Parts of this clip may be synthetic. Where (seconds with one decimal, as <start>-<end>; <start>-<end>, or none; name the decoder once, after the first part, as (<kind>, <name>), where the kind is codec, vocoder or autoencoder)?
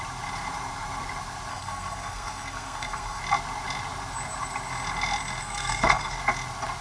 1.5-3.2 (codec, SNAC); 5.4-6.2